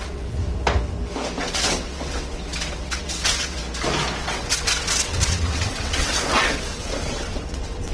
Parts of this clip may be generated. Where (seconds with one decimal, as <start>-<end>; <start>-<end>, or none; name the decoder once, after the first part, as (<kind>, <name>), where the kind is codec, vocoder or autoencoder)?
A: 0.0-0.4 (vocoder, WaveNeXt); 1.4-3.6; 4.2-7.9